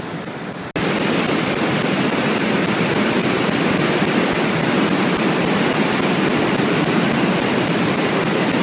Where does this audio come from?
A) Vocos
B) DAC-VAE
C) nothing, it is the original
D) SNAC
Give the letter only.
C